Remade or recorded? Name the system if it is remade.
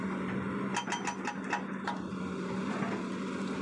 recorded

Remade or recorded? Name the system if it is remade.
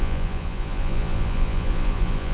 remade, vocoder, Vocos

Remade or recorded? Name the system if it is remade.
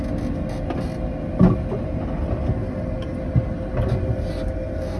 recorded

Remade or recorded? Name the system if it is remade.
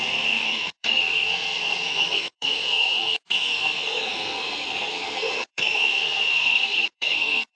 remade, codec, SNAC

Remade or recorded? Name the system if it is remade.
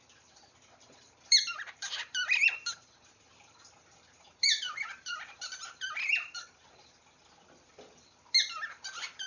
remade, vocoder, BigVGAN v2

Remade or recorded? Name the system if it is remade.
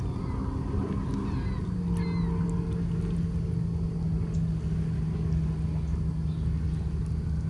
recorded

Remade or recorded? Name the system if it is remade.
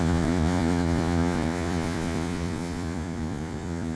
remade, vocoder, Vocos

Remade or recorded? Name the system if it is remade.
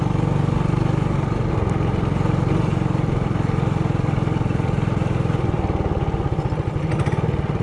recorded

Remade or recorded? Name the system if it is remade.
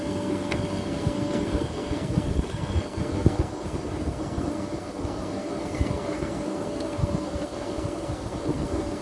remade, codec, SNAC